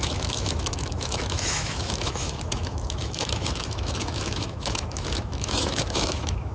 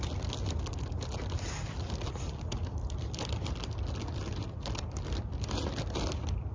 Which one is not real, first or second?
first